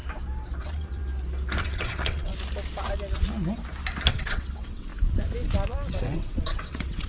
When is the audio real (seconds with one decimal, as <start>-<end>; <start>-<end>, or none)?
0.0-0.6; 1.0-1.6; 2.3-4.1; 4.9-5.9